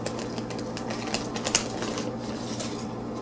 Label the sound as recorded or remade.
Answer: recorded